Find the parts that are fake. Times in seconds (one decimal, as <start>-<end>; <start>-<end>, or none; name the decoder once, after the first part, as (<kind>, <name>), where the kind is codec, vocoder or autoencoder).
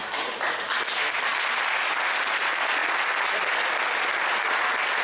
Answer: none